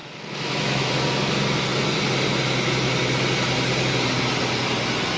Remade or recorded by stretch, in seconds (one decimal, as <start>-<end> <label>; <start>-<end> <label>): 0.0-0.9 remade; 0.9-5.2 recorded

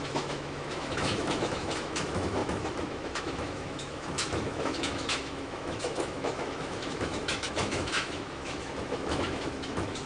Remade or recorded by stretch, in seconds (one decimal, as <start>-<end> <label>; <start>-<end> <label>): 0.0-10.1 remade

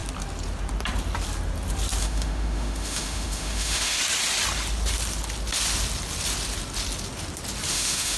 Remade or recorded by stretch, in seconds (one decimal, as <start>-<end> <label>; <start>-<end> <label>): 0.0-2.0 recorded; 2.0-4.0 remade; 4.0-7.7 recorded; 7.7-8.2 remade

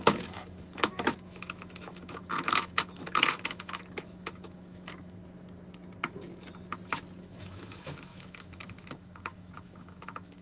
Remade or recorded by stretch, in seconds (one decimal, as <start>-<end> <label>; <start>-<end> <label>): 0.0-5.2 remade; 5.2-7.2 recorded; 7.2-10.4 remade

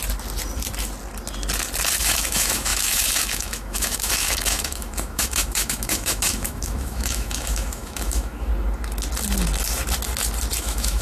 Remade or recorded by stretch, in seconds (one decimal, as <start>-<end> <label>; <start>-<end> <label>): 0.0-2.0 recorded; 2.0-8.5 remade; 8.5-10.6 recorded; 10.6-11.0 remade

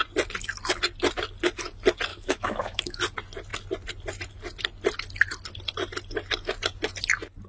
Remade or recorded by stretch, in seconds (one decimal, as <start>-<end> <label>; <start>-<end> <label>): 0.0-2.1 recorded; 2.1-3.0 remade; 3.0-7.5 recorded

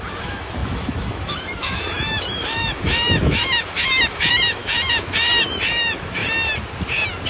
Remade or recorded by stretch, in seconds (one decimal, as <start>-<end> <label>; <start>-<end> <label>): 0.0-4.6 remade; 4.6-5.4 recorded; 5.4-6.2 remade; 6.2-7.3 recorded

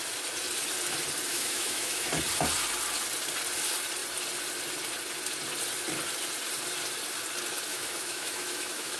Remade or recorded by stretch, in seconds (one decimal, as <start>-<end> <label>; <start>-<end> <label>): 0.0-1.3 recorded; 1.3-2.1 remade; 2.1-7.7 recorded; 7.7-9.0 remade